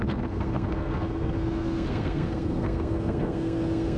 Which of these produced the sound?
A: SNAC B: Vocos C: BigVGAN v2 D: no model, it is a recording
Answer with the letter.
A